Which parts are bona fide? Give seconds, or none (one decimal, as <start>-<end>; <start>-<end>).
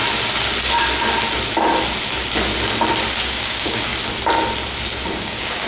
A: 0.0-3.4; 3.9-5.2